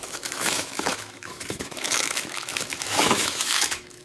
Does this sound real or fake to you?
fake